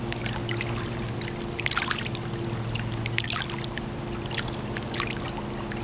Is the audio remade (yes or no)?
no